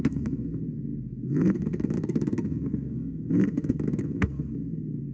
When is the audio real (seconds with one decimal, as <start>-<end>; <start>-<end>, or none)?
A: none